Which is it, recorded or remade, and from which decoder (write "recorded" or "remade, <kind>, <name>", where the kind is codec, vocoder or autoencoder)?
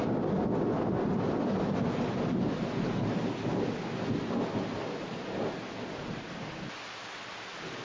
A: recorded